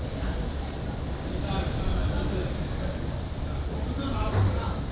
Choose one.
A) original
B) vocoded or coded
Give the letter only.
A